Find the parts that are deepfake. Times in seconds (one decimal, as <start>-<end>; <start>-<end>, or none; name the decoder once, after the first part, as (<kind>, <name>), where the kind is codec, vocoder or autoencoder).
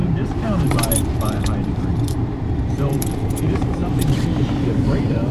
0.0-3.8 (vocoder, BigVGAN v2); 4.8-5.3